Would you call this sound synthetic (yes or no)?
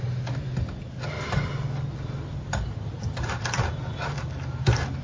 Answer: no